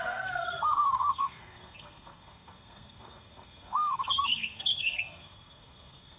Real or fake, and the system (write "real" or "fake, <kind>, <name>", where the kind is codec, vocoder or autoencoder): fake, codec, SNAC